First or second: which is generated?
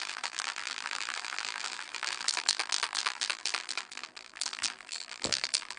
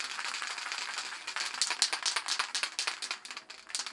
first